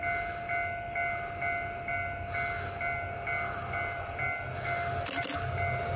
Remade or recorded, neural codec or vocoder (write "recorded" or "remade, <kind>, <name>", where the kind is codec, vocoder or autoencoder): recorded